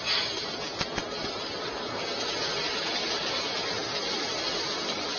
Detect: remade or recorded recorded